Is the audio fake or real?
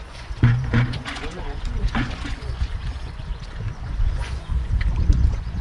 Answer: fake